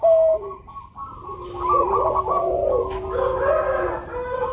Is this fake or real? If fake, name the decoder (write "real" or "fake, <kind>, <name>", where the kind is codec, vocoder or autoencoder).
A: real